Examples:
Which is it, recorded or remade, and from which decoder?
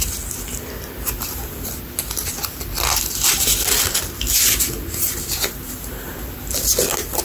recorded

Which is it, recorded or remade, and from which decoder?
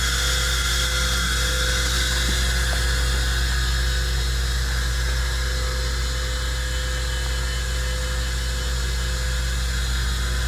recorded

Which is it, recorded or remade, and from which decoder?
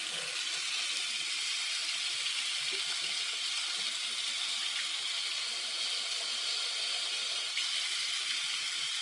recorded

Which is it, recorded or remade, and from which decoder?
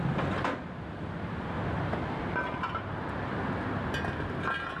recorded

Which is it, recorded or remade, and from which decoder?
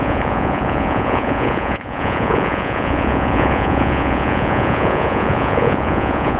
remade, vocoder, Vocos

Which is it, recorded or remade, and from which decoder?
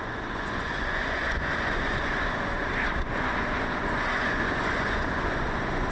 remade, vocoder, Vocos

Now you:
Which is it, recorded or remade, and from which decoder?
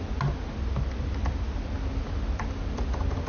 recorded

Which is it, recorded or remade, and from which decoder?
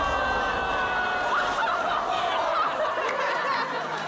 recorded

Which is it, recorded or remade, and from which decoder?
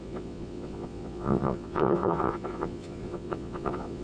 remade, vocoder, Vocos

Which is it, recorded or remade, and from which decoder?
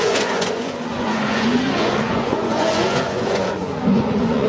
remade, vocoder, Vocos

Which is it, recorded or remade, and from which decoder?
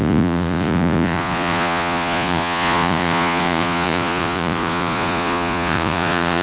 remade, vocoder, Vocos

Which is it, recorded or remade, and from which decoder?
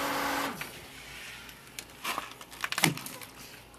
recorded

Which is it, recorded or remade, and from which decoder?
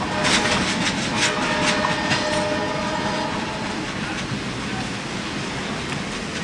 recorded